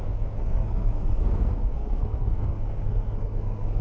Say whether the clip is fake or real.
fake